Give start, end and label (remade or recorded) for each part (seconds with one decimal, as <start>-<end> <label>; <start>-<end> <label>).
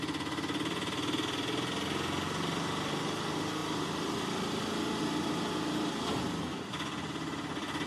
0.0-7.9 recorded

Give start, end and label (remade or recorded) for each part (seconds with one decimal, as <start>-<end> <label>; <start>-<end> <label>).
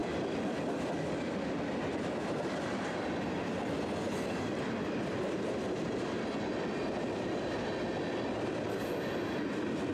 0.0-9.9 recorded